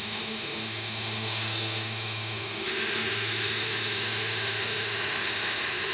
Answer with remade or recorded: remade